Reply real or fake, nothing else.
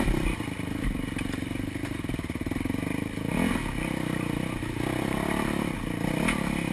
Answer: real